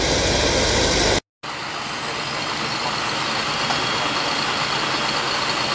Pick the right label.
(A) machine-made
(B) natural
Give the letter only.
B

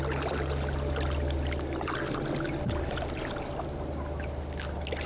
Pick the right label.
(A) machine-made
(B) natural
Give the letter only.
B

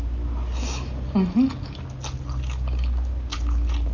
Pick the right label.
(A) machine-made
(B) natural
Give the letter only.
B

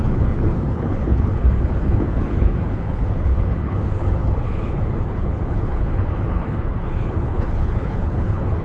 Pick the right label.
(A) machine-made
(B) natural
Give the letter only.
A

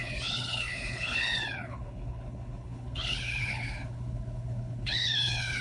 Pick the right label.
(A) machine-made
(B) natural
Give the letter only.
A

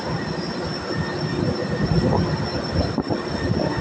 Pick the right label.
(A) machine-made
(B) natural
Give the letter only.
B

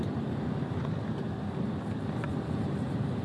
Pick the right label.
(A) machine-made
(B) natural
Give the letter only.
B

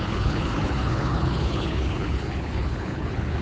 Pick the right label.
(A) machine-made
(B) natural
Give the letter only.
A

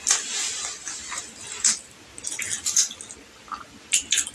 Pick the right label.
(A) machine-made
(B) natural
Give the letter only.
B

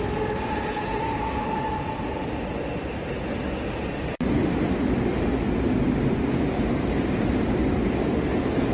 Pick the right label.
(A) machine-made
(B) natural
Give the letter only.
B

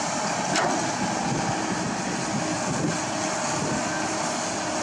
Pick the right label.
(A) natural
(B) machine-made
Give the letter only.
A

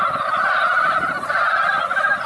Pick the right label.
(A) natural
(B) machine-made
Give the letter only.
A